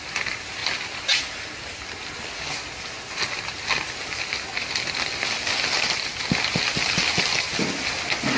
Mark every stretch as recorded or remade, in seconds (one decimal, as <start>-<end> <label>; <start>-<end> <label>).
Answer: 0.0-8.4 recorded

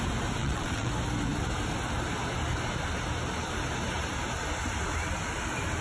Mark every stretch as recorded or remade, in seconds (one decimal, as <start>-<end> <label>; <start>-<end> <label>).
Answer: 0.0-0.4 recorded; 0.4-0.9 remade; 0.9-5.8 recorded

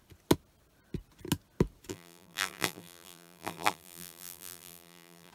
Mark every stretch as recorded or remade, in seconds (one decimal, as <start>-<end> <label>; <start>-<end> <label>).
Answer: 0.0-1.9 recorded; 1.9-5.3 remade

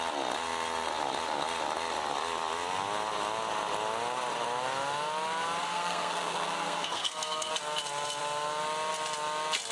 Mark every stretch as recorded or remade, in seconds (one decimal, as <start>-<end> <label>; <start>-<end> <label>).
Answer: 0.0-5.6 recorded; 5.6-7.5 remade; 7.5-9.7 recorded